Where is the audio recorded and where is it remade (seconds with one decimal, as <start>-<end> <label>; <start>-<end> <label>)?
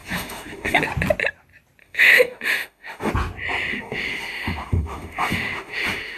0.0-0.8 remade; 0.8-1.8 recorded; 1.8-3.1 remade; 3.1-3.7 recorded; 3.7-6.2 remade